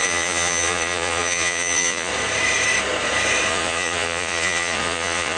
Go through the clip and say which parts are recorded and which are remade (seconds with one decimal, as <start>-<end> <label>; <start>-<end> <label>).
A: 0.0-2.1 remade; 2.1-3.5 recorded; 3.5-5.4 remade